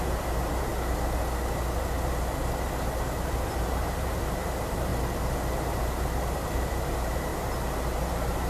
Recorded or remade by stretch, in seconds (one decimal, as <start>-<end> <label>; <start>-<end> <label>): 0.0-0.7 remade; 0.7-3.5 recorded; 3.5-4.9 remade; 4.9-6.3 recorded; 6.3-7.3 remade; 7.3-8.1 recorded; 8.1-8.5 remade